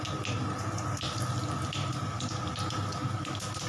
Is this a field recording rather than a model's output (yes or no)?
yes